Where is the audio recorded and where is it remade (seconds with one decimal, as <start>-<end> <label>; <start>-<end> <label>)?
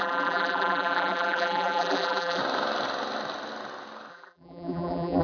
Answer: 0.0-2.4 remade; 2.4-4.1 recorded; 4.1-5.2 remade